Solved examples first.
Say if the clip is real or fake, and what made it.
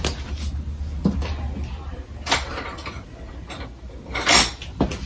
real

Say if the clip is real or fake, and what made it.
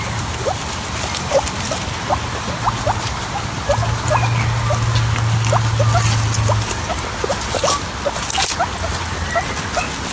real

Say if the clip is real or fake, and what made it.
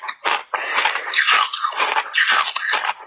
fake, vocoder, BigVGAN v2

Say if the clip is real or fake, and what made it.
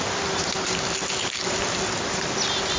real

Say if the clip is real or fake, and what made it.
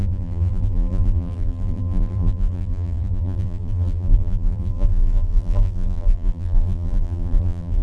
fake, vocoder, BigVGAN v2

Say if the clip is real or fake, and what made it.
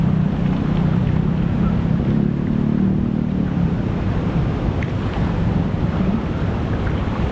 fake, vocoder, BigVGAN v2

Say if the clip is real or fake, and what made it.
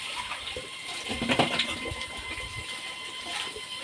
real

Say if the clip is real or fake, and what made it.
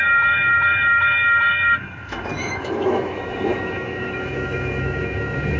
fake, autoencoder, DAC-VAE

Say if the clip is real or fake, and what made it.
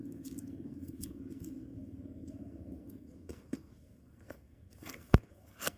fake, codec, SNAC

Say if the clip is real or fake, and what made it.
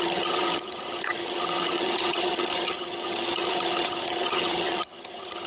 fake, vocoder, HiFi-GAN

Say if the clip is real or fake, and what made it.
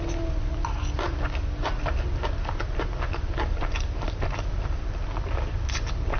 real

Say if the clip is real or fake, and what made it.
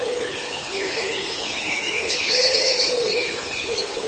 fake, codec, HILCodec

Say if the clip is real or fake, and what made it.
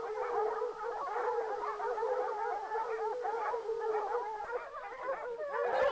real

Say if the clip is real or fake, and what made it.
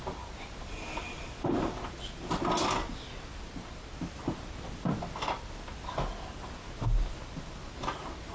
real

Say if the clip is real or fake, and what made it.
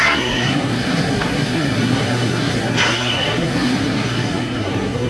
fake, codec, SNAC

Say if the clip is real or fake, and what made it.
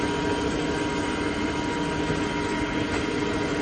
real